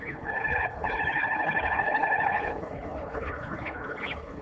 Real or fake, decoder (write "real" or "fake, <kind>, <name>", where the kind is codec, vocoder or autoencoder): fake, codec, HILCodec